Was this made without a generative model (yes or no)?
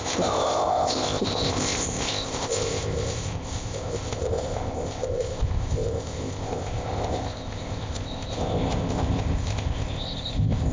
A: no